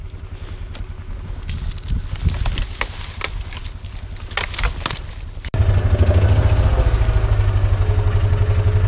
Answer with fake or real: real